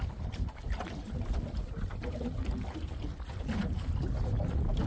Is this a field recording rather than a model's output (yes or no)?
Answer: yes